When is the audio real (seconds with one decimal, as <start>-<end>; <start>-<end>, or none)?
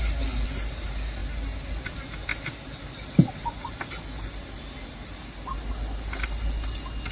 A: 0.0-7.1